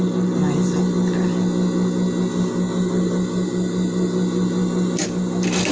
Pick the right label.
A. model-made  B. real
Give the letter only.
B